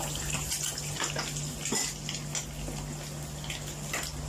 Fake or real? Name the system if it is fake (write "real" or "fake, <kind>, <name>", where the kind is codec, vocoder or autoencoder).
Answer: real